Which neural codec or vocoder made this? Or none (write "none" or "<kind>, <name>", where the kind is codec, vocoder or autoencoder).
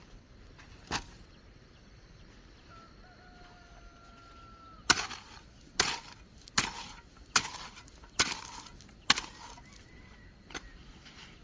none